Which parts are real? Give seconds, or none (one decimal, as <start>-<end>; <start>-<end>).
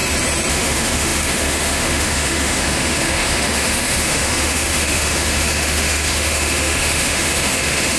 0.0-0.5